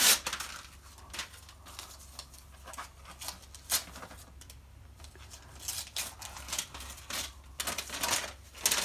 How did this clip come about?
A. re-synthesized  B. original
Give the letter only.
B